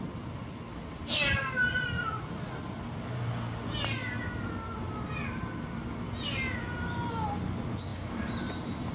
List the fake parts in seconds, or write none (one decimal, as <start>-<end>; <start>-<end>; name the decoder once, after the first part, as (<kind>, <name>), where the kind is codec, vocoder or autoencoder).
7.9-8.9 (vocoder, BigVGAN v2)